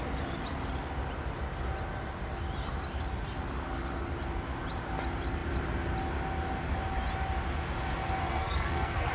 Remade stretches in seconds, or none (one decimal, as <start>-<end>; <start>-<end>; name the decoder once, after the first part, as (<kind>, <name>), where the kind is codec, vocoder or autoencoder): 8.2-9.1 (codec, SNAC)

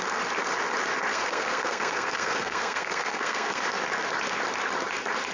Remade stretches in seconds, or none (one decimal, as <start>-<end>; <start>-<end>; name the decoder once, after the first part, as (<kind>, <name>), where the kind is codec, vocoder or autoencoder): 1.1-3.6 (codec, SNAC)

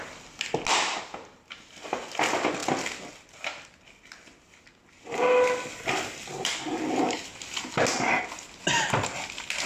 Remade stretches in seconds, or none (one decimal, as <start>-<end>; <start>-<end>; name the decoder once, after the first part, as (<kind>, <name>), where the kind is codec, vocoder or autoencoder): none

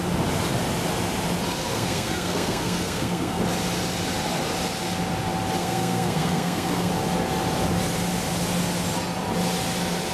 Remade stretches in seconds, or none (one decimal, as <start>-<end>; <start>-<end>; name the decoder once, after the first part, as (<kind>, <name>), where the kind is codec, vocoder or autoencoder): 1.7-3.4 (codec, SNAC); 5.6-6.9

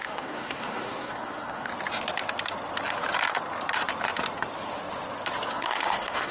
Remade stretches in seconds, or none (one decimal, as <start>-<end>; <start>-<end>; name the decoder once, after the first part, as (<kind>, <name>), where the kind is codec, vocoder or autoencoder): 0.0-1.7 (codec, SNAC); 5.5-6.3

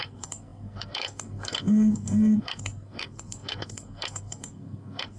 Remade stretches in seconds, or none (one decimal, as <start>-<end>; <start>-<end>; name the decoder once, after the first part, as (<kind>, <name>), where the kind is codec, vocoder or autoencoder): 0.0-5.2 (codec, SNAC)

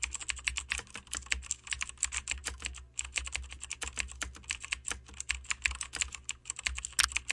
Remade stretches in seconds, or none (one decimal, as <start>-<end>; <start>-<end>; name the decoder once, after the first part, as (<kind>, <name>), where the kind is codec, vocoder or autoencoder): none